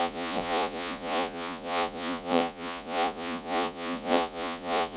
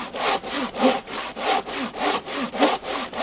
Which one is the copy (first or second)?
first